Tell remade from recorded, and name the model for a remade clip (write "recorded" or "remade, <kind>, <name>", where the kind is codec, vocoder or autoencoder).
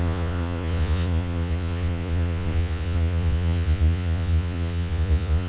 remade, vocoder, Vocos